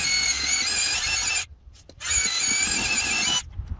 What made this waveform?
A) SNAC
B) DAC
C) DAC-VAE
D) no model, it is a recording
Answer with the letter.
D